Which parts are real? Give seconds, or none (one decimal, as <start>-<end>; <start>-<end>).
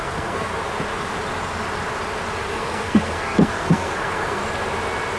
0.5-2.5; 4.4-5.2